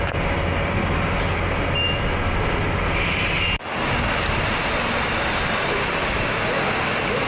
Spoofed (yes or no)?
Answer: no